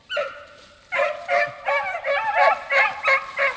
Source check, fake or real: real